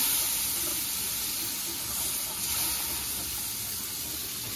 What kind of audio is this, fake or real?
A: real